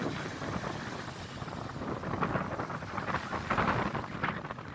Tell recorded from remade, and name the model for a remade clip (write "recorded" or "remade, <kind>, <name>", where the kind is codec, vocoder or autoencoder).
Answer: recorded